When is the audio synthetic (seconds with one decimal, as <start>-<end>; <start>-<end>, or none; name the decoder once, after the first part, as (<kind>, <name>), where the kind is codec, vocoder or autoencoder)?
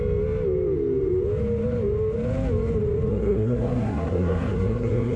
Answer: 3.1-5.2 (codec, SNAC)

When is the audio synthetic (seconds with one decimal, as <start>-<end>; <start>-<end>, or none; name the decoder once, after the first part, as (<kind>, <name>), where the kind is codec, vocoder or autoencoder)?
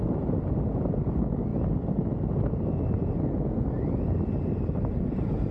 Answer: none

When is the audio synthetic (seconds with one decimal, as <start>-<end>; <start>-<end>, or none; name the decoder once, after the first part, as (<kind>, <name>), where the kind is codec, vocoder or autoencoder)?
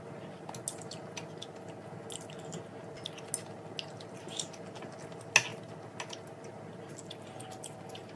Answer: none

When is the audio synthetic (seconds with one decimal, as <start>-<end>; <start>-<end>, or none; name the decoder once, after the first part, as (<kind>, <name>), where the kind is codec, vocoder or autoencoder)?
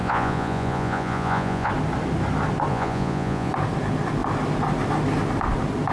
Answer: 0.0-1.7 (vocoder, Vocos); 2.7-3.5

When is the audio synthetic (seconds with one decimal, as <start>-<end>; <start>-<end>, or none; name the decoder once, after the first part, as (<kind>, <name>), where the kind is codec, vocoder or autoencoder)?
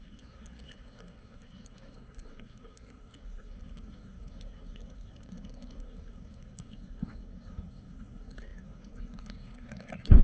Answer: 0.0-10.2 (codec, SNAC)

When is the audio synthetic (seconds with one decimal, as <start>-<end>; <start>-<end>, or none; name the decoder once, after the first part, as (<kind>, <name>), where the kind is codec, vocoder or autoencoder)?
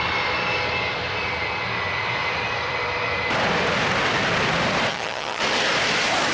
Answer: 4.9-5.4 (vocoder, HiFi-GAN)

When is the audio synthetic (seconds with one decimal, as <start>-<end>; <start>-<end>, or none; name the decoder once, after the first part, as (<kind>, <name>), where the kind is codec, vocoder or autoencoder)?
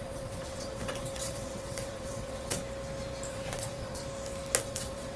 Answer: 0.0-2.6 (vocoder, WaveNeXt); 3.3-4.0; 4.6-5.2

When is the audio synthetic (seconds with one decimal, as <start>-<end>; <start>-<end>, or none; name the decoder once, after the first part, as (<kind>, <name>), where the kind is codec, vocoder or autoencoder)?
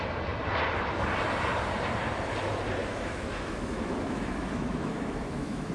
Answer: 2.8-5.7 (autoencoder, DAC-VAE)